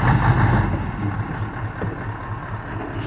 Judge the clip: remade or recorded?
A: recorded